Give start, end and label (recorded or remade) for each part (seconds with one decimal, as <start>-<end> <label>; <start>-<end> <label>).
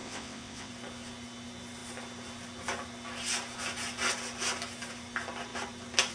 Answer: 0.0-0.7 remade; 0.7-6.1 recorded